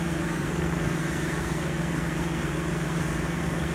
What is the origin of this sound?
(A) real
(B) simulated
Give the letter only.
B